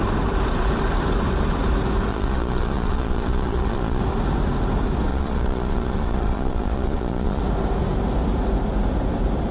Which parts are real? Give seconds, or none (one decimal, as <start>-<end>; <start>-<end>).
0.0-2.1; 4.0-5.1; 7.4-9.5